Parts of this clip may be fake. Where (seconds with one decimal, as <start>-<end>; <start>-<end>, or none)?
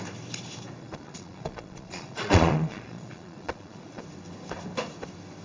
0.8-4.0